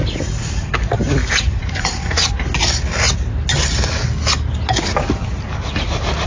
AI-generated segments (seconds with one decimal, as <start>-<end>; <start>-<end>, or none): 1.6-2.3